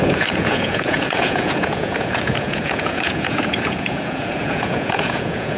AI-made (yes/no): yes